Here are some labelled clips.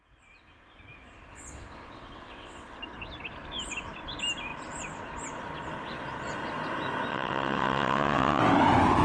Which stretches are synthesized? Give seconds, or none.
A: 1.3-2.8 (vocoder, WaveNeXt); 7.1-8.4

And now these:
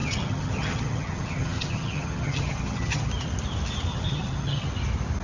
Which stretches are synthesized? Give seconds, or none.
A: 0.0-3.1 (vocoder, HiFi-GAN); 3.9-4.7

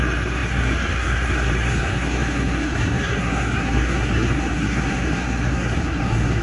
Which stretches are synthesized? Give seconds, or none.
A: 0.0-6.4 (codec, SNAC)

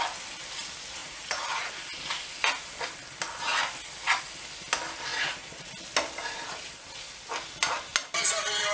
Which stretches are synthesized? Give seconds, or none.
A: 1.0-1.7 (vocoder, Vocos); 5.1-5.7

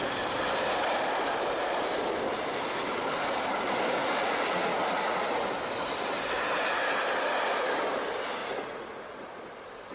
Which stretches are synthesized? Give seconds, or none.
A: 4.0-5.5 (vocoder, Vocos); 8.4-9.5

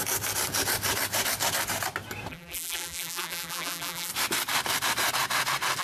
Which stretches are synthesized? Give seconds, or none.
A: 2.3-4.1 (vocoder, BigVGAN v2)